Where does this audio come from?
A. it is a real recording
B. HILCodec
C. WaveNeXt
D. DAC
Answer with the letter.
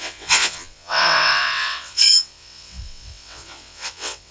C